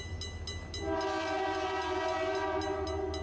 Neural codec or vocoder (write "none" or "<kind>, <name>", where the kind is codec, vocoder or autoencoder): none